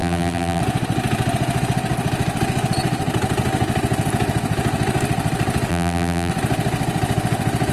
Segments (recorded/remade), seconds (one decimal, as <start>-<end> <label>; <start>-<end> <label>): 0.0-0.6 remade; 0.6-5.7 recorded; 5.7-6.3 remade; 6.3-7.7 recorded